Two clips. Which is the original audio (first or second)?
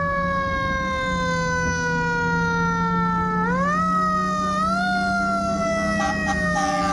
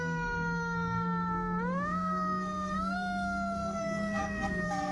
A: first